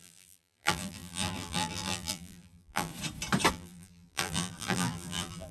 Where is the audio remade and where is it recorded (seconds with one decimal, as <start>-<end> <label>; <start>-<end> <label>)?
0.0-2.9 remade; 2.9-3.5 recorded; 3.5-5.5 remade